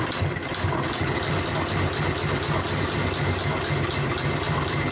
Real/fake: real